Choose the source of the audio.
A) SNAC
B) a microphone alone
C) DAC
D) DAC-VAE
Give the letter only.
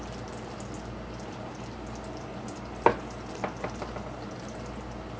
B